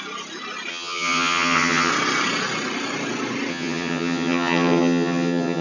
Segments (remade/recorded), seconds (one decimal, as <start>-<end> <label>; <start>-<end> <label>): 0.0-0.7 recorded; 0.7-1.9 remade; 1.9-3.5 recorded; 3.5-5.6 remade